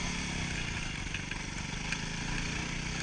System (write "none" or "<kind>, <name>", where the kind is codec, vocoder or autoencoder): none